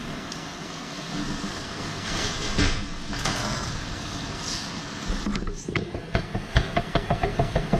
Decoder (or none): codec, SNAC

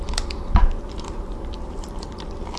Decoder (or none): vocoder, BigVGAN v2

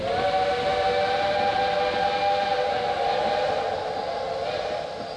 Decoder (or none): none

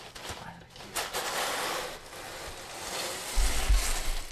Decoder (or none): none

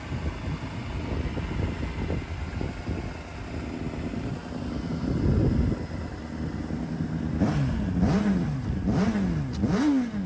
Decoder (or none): none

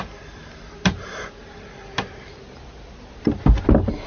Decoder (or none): none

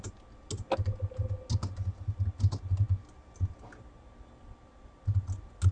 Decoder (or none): none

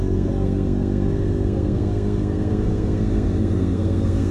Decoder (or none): codec, SNAC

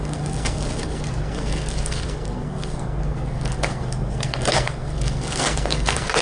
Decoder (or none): codec, SNAC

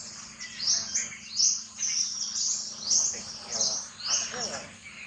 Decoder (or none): none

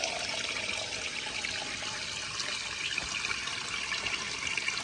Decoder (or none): none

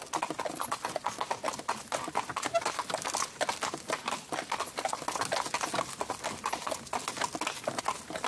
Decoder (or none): none